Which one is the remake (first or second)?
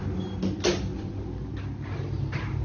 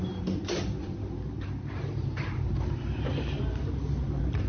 second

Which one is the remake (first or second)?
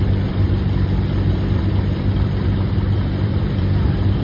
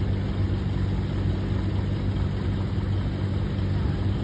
first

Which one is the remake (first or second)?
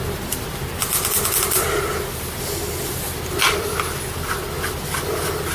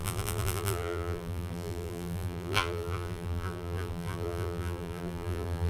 second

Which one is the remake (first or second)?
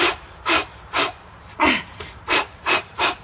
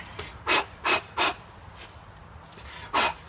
first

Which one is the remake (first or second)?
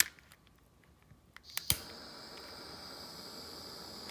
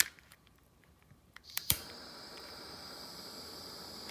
second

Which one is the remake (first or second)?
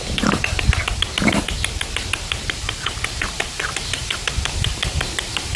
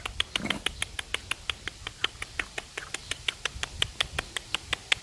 first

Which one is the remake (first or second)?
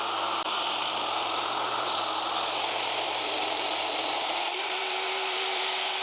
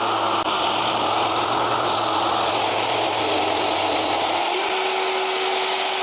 first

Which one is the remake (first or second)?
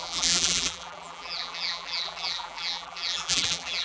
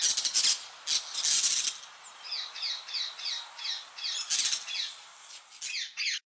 first